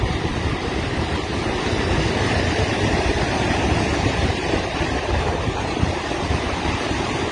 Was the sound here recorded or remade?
remade